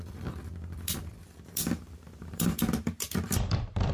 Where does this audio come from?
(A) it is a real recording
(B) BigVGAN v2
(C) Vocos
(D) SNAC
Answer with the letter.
B